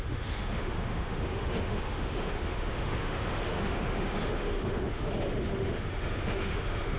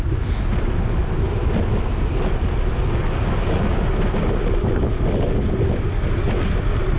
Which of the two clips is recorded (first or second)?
second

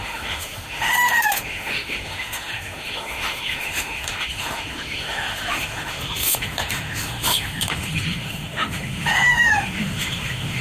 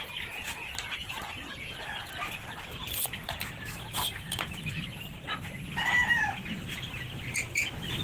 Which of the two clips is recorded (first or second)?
second